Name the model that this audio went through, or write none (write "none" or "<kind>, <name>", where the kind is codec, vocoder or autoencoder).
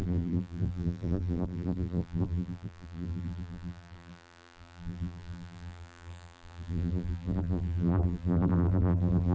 vocoder, BigVGAN v2